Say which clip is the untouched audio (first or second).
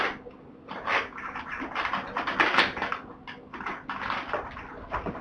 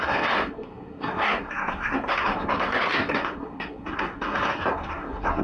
first